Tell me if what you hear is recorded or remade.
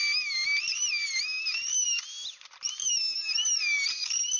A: recorded